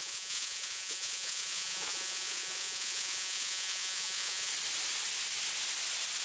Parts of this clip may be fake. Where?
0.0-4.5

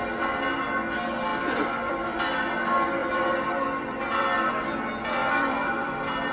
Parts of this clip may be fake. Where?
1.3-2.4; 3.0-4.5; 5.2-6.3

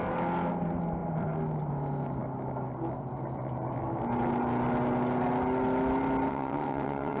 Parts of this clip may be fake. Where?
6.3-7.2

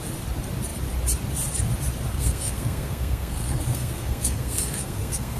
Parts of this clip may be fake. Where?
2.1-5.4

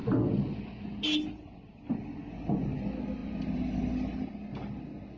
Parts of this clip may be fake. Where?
none

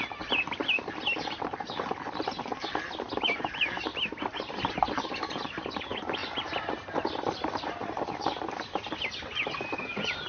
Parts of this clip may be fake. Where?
0.0-2.5; 3.4-3.9; 4.5-10.3